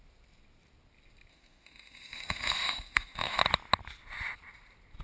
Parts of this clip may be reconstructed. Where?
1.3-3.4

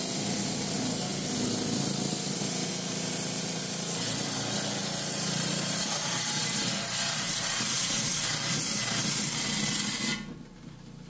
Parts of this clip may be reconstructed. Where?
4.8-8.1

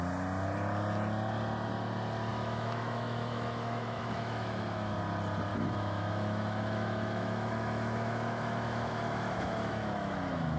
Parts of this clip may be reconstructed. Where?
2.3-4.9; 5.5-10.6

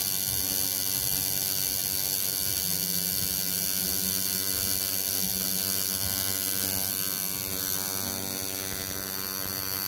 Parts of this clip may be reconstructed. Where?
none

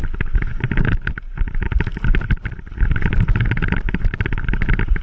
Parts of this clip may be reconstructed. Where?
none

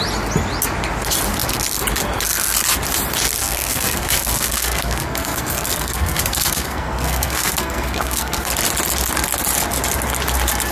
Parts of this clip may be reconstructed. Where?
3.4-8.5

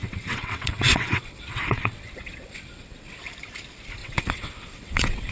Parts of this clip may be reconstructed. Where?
0.0-3.2; 4.0-5.3

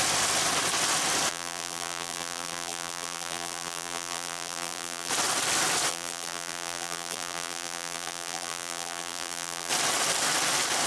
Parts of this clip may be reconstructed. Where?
1.3-5.1; 5.9-9.7